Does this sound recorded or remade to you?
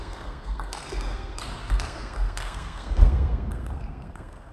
remade